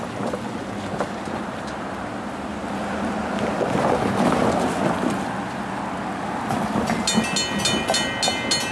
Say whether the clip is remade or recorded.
recorded